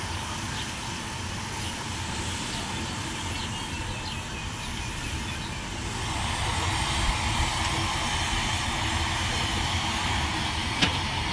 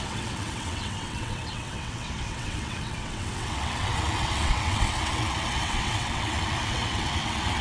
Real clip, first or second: first